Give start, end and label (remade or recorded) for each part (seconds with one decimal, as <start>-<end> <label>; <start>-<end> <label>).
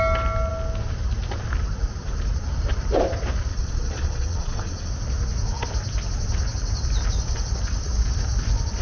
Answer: 0.0-3.5 recorded; 3.5-4.9 remade; 4.9-8.8 recorded